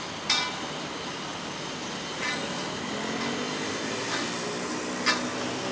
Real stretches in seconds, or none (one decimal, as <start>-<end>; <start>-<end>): 0.0-5.7